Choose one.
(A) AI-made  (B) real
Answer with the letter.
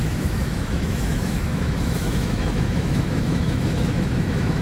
A